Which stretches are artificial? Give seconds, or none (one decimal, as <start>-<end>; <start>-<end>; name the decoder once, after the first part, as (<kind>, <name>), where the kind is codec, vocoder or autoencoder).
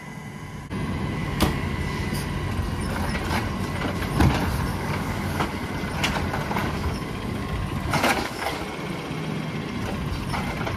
1.2-2.2 (codec, DAC); 4.7-5.7; 6.6-8.6